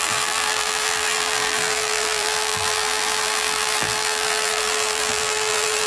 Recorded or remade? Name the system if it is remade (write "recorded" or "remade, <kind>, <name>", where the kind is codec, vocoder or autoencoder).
remade, vocoder, BigVGAN v2